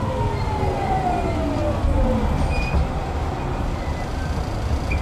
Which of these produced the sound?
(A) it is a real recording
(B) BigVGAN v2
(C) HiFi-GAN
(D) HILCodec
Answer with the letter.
A